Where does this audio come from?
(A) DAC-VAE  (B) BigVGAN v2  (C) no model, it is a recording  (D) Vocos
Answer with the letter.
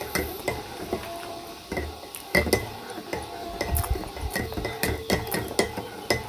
C